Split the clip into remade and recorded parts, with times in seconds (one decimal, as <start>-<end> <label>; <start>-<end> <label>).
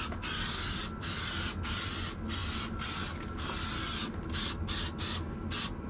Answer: 0.0-5.9 recorded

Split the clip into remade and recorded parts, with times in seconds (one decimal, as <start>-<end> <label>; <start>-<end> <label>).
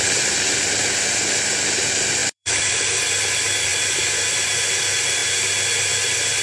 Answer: 0.0-2.2 recorded; 2.2-2.8 remade; 2.8-6.4 recorded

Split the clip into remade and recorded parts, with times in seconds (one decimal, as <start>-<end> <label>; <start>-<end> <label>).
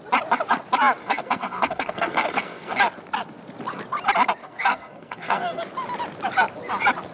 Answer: 0.0-1.0 recorded; 1.0-2.8 remade; 2.8-4.4 recorded; 4.4-5.6 remade; 5.6-7.1 recorded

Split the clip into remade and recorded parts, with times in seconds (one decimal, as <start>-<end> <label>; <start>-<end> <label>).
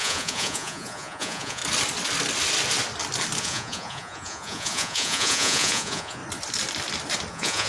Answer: 0.0-1.6 remade; 1.6-3.4 recorded; 3.4-6.2 remade; 6.2-7.3 recorded; 7.3-7.7 remade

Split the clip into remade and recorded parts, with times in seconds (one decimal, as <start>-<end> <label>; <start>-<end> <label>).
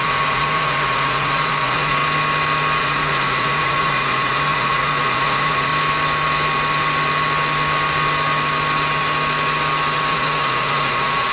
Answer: 0.0-2.0 remade; 2.0-2.8 recorded; 2.8-5.7 remade; 5.7-10.1 recorded; 10.1-11.3 remade